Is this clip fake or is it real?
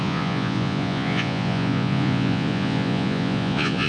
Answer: fake